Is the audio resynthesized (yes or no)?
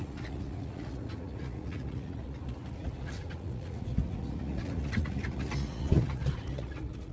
yes